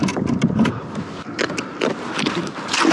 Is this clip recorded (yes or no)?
yes